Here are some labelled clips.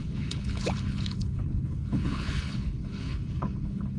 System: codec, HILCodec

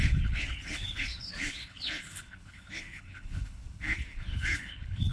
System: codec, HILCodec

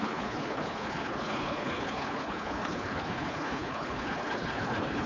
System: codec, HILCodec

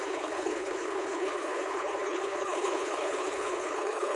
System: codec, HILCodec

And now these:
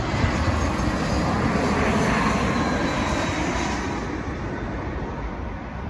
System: none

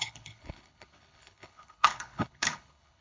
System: codec, HILCodec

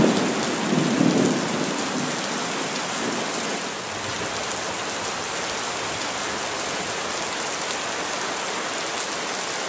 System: none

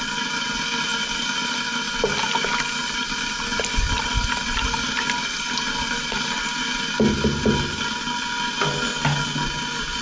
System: none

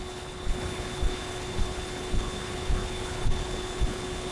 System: codec, HILCodec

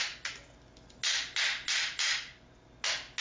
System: none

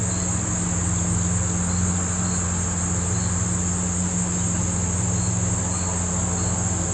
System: none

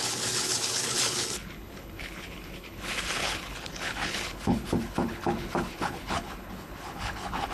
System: codec, HILCodec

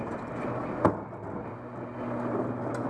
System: none